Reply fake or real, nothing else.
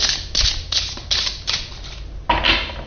real